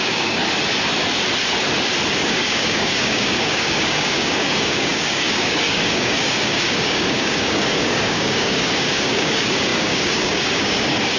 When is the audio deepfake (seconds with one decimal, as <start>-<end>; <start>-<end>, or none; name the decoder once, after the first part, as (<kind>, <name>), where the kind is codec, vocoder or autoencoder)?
0.0-0.4 (codec, DAC); 2.2-11.2

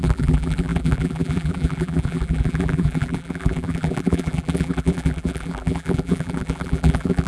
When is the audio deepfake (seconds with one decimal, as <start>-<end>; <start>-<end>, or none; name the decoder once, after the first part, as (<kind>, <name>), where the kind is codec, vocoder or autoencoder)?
0.0-7.3 (vocoder, BigVGAN v2)

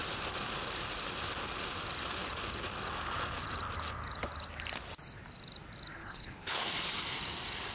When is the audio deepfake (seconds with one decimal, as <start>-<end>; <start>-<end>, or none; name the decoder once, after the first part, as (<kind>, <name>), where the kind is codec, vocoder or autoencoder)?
6.0-6.6 (codec, HILCodec)